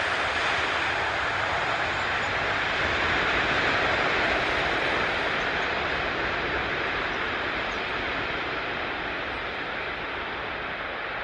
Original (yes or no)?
no